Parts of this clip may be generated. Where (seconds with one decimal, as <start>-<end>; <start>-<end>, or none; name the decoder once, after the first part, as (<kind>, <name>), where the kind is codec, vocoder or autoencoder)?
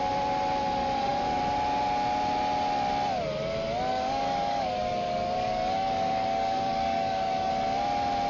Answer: 3.9-7.5 (codec, DAC)